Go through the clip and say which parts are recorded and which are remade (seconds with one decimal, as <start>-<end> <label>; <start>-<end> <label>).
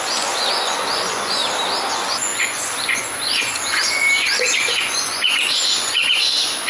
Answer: 0.0-1.4 remade; 1.4-1.9 recorded; 1.9-6.7 remade